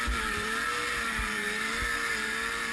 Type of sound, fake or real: fake